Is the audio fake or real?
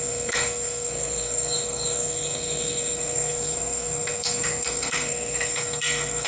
fake